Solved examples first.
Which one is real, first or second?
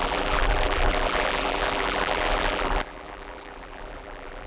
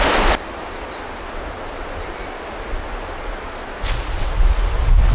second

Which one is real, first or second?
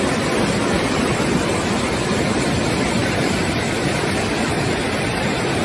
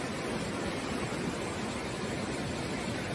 second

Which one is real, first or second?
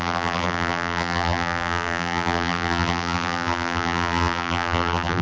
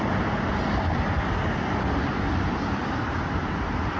second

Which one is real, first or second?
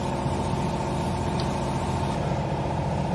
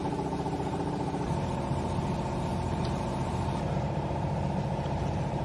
first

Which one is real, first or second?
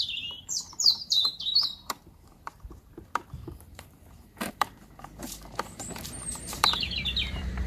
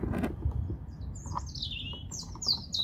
second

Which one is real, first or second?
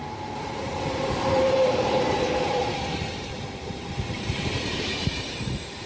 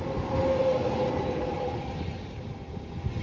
second